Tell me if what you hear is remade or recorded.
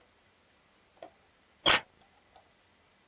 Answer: recorded